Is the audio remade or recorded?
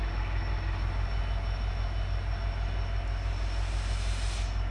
recorded